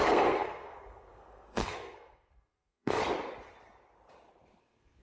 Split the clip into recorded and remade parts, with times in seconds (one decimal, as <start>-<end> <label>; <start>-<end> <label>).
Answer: 0.0-3.0 remade; 3.0-4.6 recorded; 4.6-5.0 remade